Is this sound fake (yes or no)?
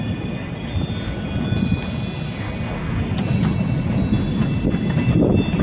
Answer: no